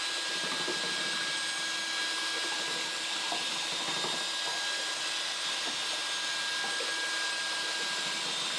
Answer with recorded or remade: recorded